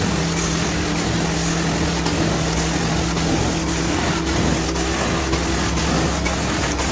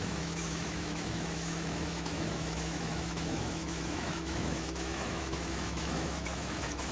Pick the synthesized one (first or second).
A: second